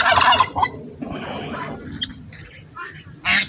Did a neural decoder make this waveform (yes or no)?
no